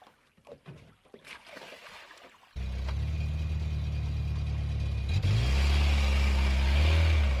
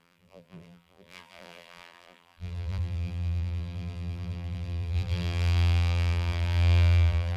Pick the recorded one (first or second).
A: first